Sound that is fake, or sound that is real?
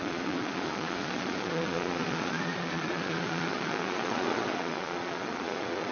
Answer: fake